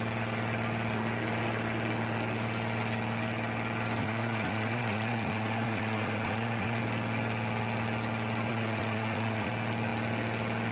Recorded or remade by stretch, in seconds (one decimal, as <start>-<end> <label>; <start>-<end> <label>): 0.0-4.0 recorded; 4.0-6.8 remade; 6.8-8.5 recorded; 8.5-9.5 remade; 9.5-10.7 recorded

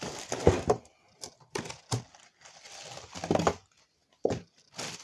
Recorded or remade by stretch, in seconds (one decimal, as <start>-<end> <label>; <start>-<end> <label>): 0.0-5.0 recorded

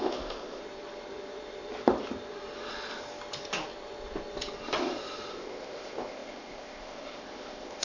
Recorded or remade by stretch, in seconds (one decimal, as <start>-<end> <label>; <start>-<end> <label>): 0.0-0.6 remade; 0.6-5.3 recorded; 5.3-7.8 remade